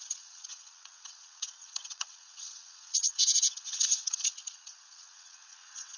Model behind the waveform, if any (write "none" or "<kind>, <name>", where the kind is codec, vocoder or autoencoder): vocoder, WaveNeXt